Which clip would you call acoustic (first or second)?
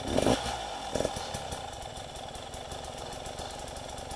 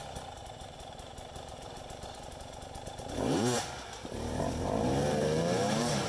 first